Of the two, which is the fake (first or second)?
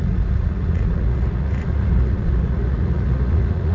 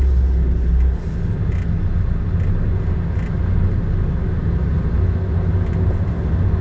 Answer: first